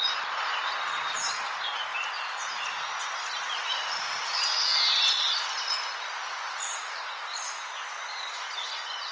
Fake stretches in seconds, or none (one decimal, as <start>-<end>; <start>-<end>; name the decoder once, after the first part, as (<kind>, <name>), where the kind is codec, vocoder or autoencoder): 1.9-3.0 (vocoder, BigVGAN v2); 7.3-9.1